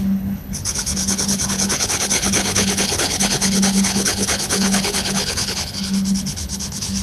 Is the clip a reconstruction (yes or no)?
yes